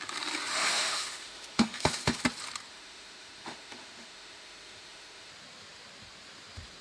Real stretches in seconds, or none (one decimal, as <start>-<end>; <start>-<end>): 0.0-0.5; 2.2-2.7; 5.3-6.8